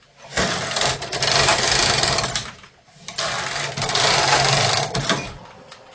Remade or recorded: recorded